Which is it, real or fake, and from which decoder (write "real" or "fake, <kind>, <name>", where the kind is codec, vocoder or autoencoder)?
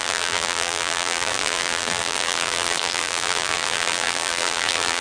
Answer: fake, vocoder, BigVGAN v2